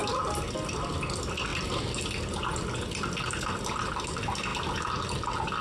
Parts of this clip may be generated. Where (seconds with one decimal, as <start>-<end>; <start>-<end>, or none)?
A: none